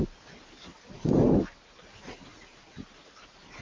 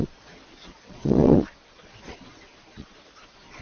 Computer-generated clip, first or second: second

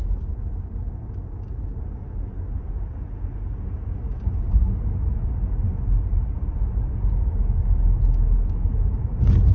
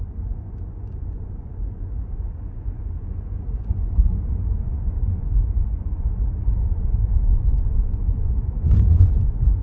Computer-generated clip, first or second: second